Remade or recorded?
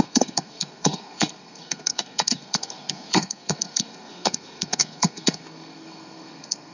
remade